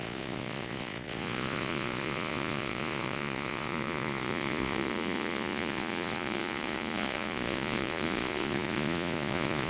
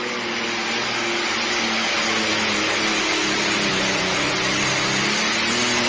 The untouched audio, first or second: second